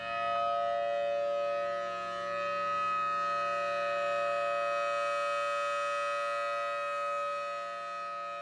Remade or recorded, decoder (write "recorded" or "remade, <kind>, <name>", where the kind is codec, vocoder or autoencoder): recorded